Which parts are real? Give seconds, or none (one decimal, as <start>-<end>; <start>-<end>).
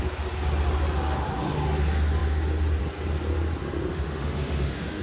0.0-3.9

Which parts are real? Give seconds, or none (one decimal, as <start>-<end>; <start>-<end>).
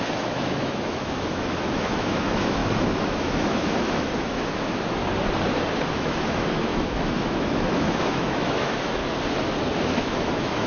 5.0-5.9; 9.0-10.0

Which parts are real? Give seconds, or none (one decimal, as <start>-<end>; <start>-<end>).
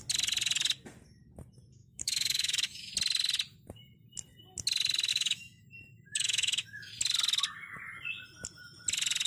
0.0-1.8; 2.9-5.1; 6.9-9.3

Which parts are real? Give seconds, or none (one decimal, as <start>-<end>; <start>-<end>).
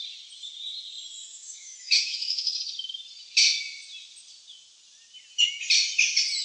0.0-1.2; 2.6-6.4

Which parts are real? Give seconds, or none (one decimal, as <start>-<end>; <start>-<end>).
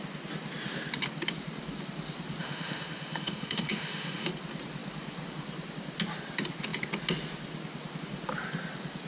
0.0-2.4; 4.3-9.1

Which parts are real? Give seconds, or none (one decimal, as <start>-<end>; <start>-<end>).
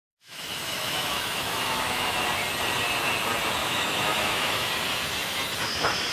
2.2-3.6; 4.7-6.1